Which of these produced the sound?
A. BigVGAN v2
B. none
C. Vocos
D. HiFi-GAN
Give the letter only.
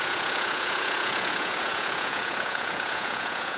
C